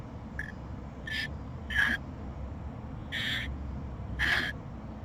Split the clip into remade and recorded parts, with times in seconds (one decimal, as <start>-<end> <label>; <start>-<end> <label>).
0.0-3.0 recorded; 3.0-3.7 remade; 3.7-5.0 recorded